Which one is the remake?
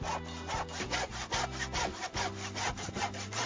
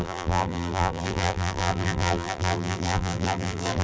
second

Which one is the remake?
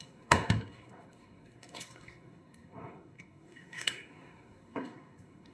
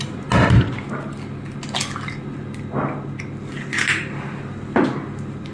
first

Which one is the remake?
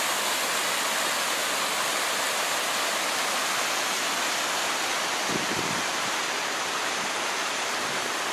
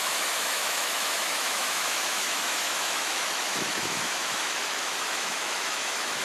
second